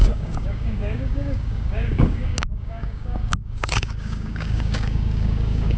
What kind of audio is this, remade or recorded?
remade